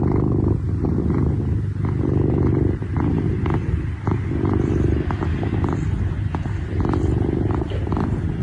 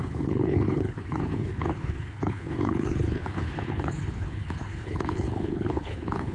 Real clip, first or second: first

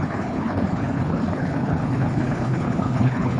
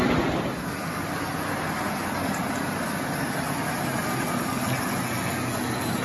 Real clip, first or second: second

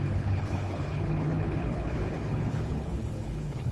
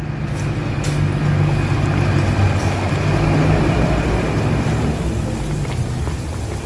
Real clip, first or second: second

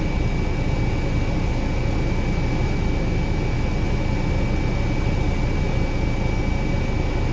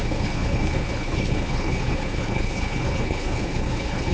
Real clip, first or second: first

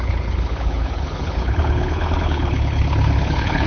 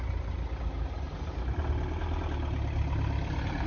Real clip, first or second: second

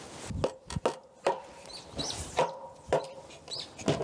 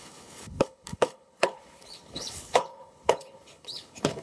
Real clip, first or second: first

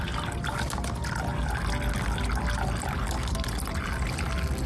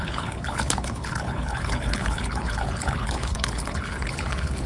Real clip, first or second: first